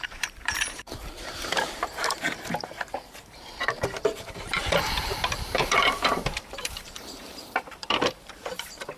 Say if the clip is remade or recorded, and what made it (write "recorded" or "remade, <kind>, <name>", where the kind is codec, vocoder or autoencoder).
remade, vocoder, BigVGAN v2